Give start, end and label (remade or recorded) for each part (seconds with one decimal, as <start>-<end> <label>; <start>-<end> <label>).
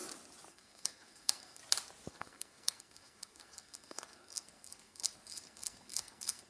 0.0-0.5 recorded; 0.5-1.6 remade; 1.6-2.1 recorded; 2.1-6.5 remade